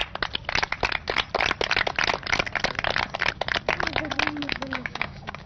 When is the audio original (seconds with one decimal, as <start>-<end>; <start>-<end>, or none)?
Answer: 0.0-4.4